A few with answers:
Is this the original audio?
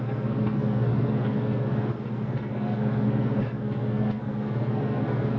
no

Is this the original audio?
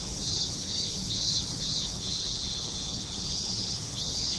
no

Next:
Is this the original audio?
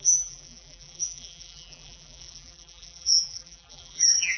no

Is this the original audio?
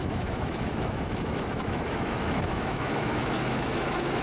no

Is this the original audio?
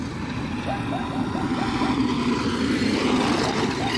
yes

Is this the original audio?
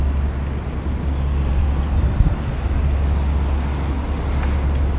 yes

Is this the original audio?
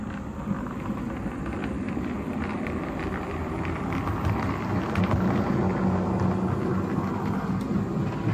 yes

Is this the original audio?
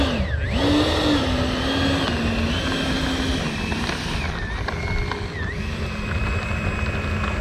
yes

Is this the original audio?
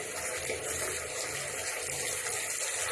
yes